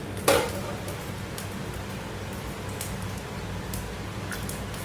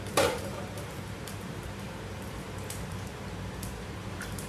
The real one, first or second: first